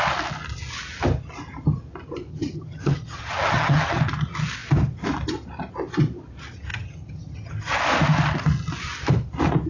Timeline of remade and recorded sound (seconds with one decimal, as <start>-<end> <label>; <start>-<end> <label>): 0.0-2.3 recorded; 2.3-4.0 remade; 4.0-6.7 recorded; 6.7-7.8 remade; 7.8-9.7 recorded